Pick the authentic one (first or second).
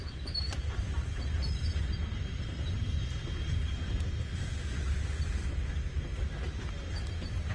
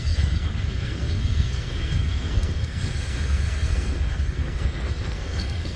first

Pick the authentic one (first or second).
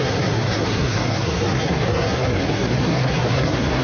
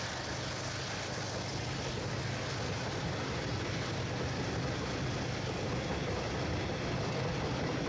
second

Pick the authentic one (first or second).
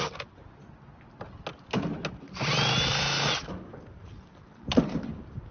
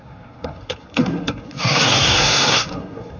first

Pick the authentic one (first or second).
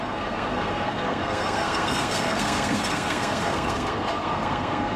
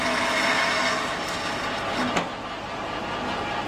second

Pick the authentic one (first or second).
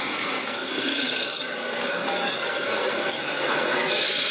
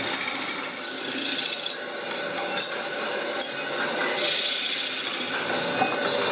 second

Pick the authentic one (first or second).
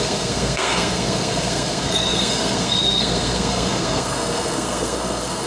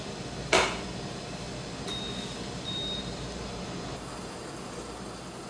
second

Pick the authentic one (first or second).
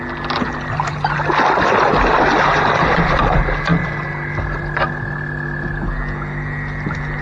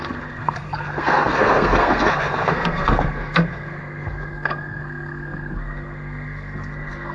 first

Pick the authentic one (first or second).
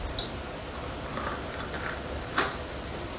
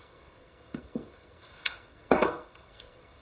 first